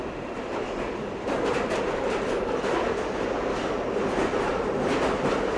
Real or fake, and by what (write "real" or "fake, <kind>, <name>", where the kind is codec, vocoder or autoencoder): real